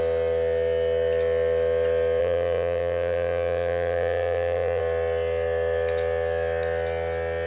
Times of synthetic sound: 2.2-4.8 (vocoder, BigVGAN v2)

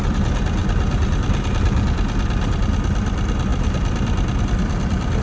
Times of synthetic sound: 0.0-5.2 (vocoder, BigVGAN v2)

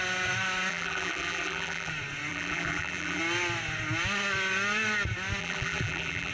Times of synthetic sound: 0.7-1.9 (vocoder, BigVGAN v2); 2.3-3.2; 5.4-6.3

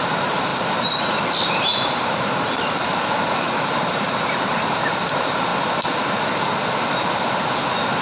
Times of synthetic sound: 0.0-5.5 (vocoder, BigVGAN v2)

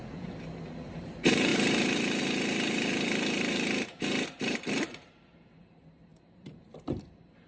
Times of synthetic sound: 0.9-7.5 (vocoder, BigVGAN v2)

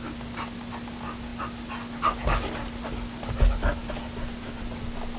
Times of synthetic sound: none